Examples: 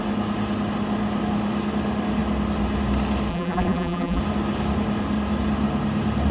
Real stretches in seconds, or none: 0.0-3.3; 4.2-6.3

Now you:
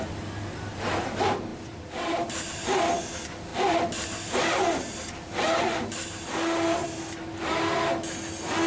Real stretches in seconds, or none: 0.0-1.5; 2.5-8.7

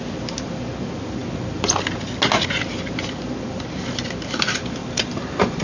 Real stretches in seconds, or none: 0.0-4.8

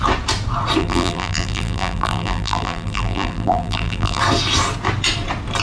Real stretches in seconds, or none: 0.0-0.8; 4.2-5.6

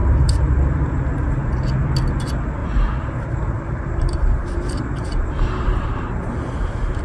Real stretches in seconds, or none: 1.6-2.6

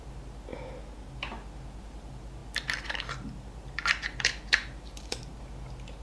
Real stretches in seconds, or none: 0.5-1.1